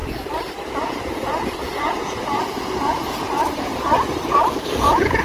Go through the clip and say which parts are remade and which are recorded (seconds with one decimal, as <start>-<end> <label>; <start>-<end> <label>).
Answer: 0.0-0.7 recorded; 0.7-3.7 remade; 3.7-4.3 recorded; 4.3-5.2 remade